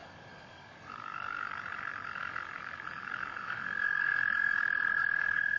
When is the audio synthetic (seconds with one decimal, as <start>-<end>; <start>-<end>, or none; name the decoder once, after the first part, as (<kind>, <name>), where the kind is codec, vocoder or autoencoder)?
0.0-5.6 (codec, DAC)